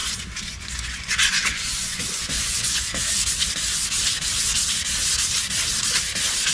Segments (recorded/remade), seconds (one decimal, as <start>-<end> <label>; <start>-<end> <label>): 0.0-3.0 remade; 3.0-6.5 recorded